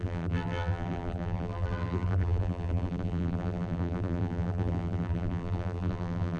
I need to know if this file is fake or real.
fake